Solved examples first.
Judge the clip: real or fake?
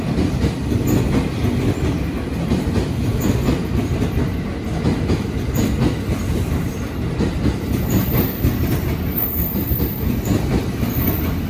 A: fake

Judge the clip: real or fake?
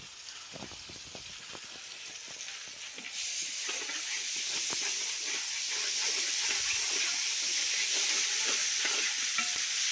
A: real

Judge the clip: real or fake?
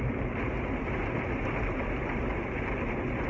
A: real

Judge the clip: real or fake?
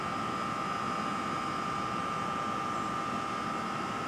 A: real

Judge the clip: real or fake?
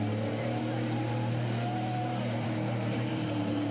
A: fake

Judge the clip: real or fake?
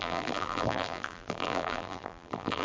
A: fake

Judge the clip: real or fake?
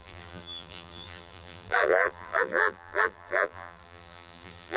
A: fake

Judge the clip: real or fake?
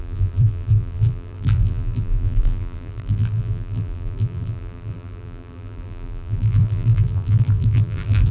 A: fake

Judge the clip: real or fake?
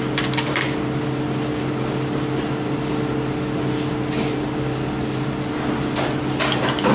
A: real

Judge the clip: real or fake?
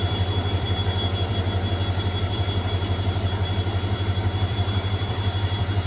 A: fake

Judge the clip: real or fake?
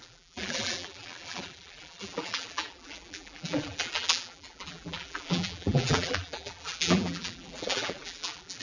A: fake